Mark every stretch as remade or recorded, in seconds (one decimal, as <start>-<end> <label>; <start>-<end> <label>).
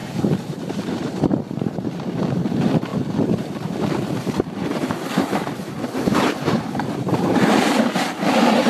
0.0-8.7 remade